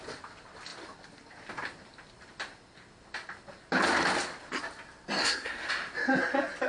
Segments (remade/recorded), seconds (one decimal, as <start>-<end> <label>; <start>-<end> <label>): 0.0-5.2 recorded; 5.2-5.7 remade; 5.7-6.7 recorded